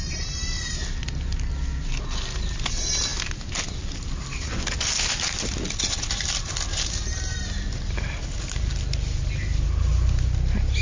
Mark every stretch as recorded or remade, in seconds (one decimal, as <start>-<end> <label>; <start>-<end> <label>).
0.0-10.8 recorded